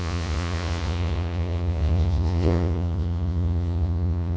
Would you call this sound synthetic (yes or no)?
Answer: yes